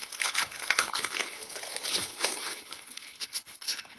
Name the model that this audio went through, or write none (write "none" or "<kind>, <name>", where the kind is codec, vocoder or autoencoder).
codec, HILCodec